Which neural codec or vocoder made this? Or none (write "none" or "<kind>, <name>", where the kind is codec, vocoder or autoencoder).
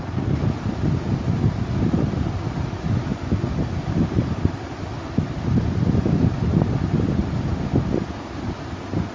none